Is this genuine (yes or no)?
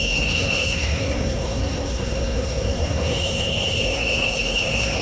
no